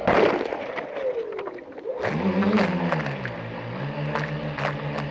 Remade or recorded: recorded